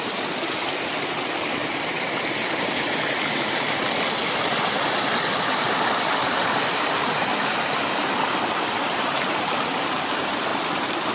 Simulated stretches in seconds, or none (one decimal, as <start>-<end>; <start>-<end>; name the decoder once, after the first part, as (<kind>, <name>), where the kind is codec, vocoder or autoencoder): 1.6-3.5 (vocoder, BigVGAN v2); 4.2-9.1; 10.5-11.1